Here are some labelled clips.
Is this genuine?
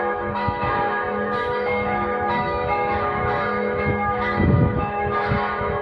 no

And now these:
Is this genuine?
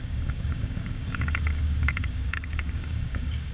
no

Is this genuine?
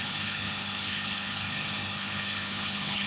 no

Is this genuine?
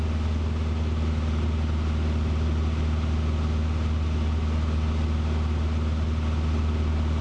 yes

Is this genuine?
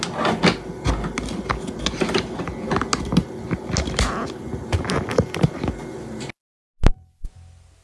yes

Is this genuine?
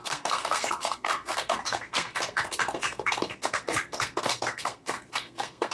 no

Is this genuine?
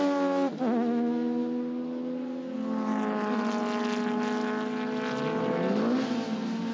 yes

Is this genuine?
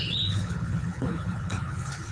no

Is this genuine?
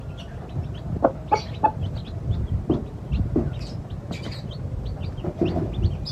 yes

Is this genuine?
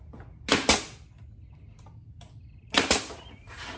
yes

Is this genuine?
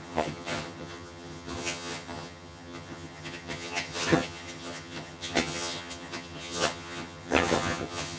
no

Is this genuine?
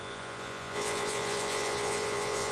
no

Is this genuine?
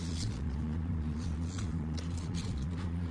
no